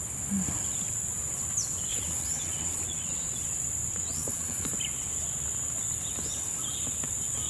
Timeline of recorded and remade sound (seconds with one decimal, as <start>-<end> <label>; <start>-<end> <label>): 0.0-1.9 recorded; 1.9-3.4 remade; 3.4-3.9 recorded; 3.9-4.7 remade; 4.7-7.5 recorded